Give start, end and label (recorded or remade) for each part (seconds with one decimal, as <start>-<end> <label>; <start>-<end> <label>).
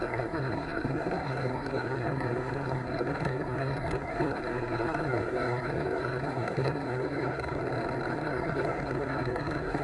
0.0-7.6 remade; 7.6-8.1 recorded; 8.1-9.8 remade